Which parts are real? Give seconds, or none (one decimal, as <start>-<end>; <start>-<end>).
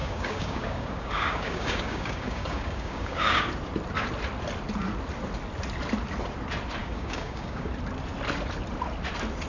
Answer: 3.5-6.8; 7.7-9.5